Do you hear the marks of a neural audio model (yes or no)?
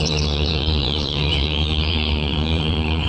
yes